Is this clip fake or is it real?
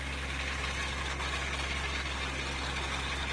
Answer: real